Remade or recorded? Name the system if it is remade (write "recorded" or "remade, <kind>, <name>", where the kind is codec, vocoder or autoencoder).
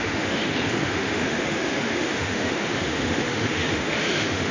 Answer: remade, autoencoder, DAC-VAE